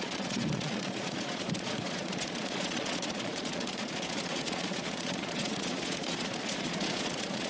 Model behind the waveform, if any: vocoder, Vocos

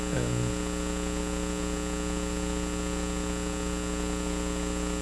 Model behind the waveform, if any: none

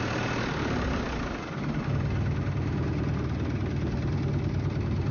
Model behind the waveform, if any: none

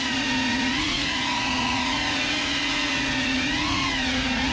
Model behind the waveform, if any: vocoder, Vocos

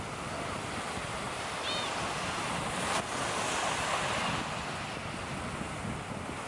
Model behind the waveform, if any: none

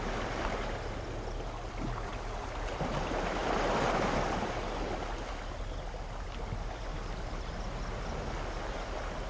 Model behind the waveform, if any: none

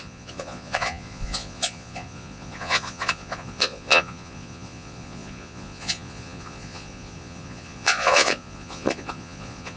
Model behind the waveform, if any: vocoder, Vocos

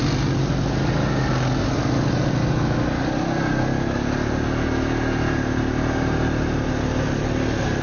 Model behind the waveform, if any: none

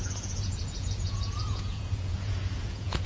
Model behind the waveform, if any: vocoder, Vocos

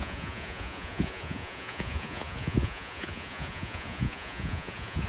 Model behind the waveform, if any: vocoder, Vocos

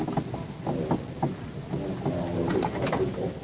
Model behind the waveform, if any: none